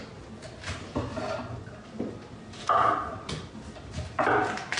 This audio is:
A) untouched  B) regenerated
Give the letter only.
A